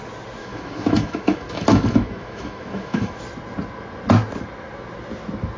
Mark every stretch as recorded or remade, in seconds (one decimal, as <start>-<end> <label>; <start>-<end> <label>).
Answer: 0.0-0.4 recorded; 0.4-3.2 remade; 3.2-5.6 recorded